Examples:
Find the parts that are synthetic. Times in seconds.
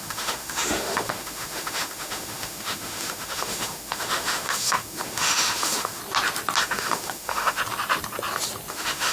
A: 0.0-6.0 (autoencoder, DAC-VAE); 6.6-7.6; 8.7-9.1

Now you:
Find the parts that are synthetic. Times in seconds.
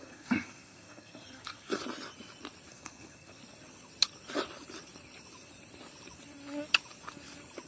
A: 0.0-1.8 (codec, SNAC); 2.7-3.4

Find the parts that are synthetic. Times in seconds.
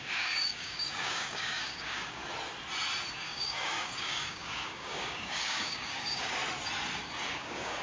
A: 0.0-2.2 (codec, DAC); 3.1-6.4; 7.3-7.8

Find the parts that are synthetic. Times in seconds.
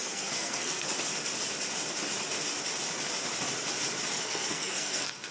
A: 0.0-0.9 (codec, SNAC); 4.1-5.3